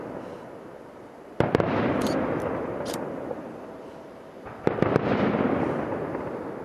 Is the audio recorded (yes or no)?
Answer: yes